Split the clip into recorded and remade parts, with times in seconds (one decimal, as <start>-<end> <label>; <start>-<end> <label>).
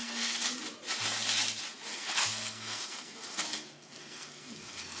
0.0-0.5 remade; 0.5-1.9 recorded; 1.9-5.0 remade